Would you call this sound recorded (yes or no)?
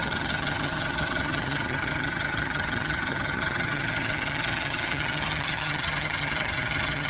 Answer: no